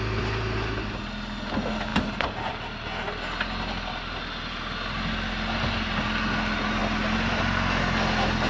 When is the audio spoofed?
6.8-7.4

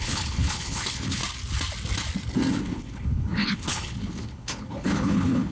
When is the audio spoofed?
0.0-1.2; 2.6-5.5